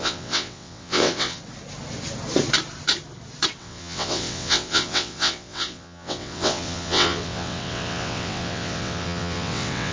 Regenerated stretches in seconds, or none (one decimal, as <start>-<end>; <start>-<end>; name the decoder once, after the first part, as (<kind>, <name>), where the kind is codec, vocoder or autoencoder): 0.0-1.4 (vocoder, WaveNeXt); 3.6-9.9